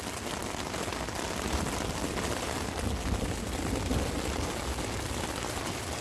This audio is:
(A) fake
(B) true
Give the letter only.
B